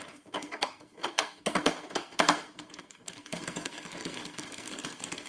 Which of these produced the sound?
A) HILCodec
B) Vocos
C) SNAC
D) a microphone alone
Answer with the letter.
C